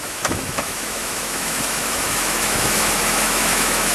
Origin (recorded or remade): remade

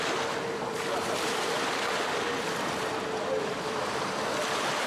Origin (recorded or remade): recorded